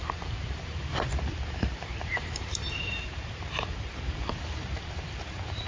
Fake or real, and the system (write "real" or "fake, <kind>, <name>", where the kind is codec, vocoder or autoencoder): fake, vocoder, BigVGAN v2